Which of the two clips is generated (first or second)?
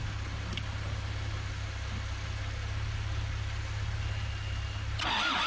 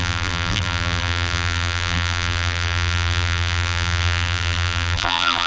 second